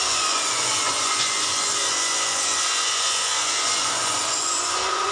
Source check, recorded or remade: remade